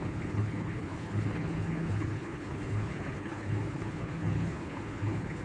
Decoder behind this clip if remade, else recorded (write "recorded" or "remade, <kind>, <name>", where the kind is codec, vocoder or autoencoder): remade, codec, HILCodec